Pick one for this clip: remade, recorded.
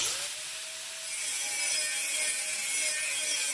recorded